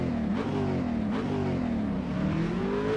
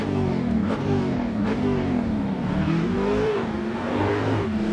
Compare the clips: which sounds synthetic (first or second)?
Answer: second